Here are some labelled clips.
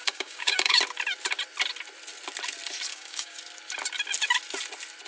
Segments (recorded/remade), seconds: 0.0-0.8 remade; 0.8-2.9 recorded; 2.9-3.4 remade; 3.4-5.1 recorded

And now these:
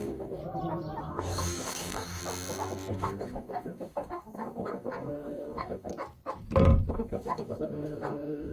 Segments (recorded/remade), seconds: 0.0-0.4 remade; 0.4-1.0 recorded; 1.0-2.2 remade; 2.2-2.9 recorded; 2.9-5.9 remade; 5.9-6.9 recorded; 6.9-8.5 remade

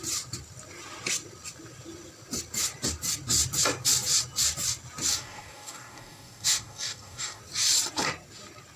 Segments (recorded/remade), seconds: 0.0-5.1 recorded; 5.1-7.4 remade; 7.4-8.8 recorded

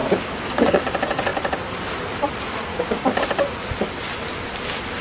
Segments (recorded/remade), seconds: 0.0-0.8 remade; 0.8-2.7 recorded; 2.7-3.2 remade; 3.2-5.0 recorded